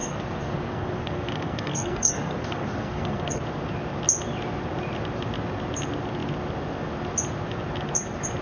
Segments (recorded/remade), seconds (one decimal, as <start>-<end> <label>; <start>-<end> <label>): 0.0-3.4 remade; 3.4-8.4 recorded